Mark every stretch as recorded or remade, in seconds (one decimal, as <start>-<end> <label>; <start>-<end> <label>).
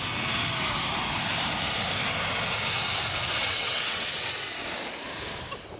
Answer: 0.0-3.4 recorded; 3.4-4.3 remade; 4.3-5.8 recorded